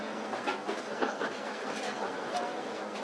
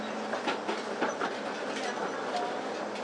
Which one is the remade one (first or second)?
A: first